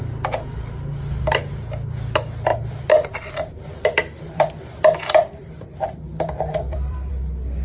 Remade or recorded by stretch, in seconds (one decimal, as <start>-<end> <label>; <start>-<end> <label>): 0.0-2.5 recorded; 2.5-7.1 remade; 7.1-7.6 recorded